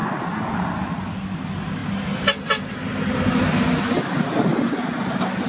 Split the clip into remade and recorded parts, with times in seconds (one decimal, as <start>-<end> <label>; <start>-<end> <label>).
0.0-5.5 recorded